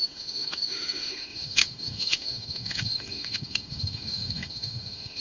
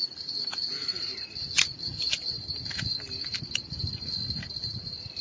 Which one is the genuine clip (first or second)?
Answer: second